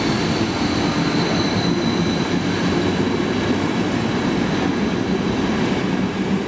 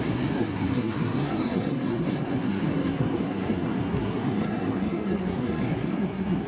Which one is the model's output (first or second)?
second